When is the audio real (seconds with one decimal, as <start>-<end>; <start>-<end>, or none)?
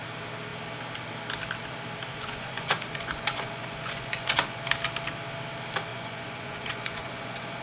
0.0-2.1; 4.6-5.9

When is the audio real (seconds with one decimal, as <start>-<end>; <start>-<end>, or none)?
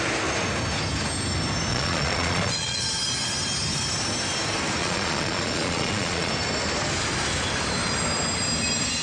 0.0-1.7; 2.8-4.8; 6.3-9.0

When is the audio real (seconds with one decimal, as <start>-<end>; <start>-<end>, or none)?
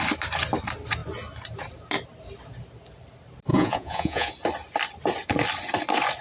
0.0-3.5; 4.3-6.2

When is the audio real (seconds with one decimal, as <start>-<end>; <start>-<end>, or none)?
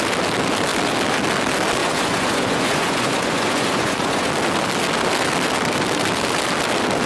0.0-1.8; 4.3-7.1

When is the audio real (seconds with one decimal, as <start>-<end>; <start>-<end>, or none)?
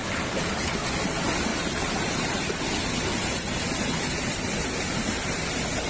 0.0-5.9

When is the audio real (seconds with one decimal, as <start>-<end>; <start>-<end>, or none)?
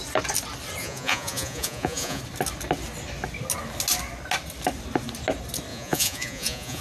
0.0-0.8; 2.2-5.7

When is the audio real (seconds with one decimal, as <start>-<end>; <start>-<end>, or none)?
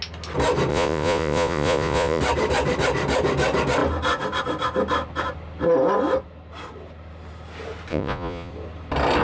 0.0-0.7; 2.2-7.9; 8.5-9.2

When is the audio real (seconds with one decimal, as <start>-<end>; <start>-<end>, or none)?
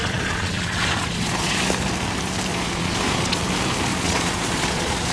1.6-2.5; 3.4-3.9